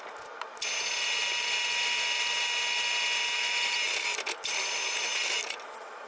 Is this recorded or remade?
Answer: recorded